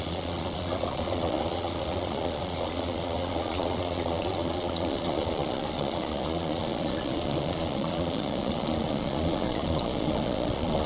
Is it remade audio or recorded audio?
remade